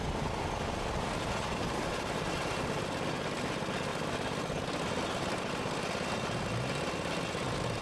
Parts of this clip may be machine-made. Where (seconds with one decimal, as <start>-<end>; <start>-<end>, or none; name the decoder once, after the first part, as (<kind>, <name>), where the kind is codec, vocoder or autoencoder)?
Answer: none